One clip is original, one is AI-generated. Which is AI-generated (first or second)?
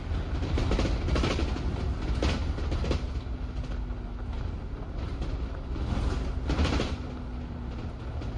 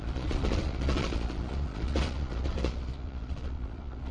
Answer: second